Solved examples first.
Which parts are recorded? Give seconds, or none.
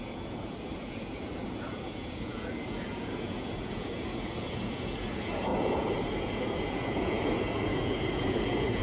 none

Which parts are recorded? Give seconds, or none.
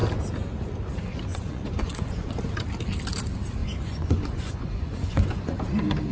0.0-1.3; 2.4-3.6; 5.6-6.1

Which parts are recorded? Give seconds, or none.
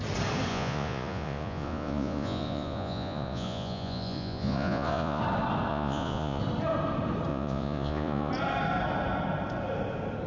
0.0-0.5; 5.2-5.7; 6.4-7.3; 8.3-10.3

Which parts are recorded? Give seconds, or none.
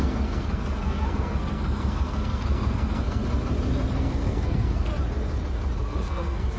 3.2-4.0; 4.9-5.8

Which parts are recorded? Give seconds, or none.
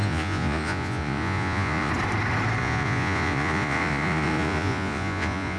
1.9-2.6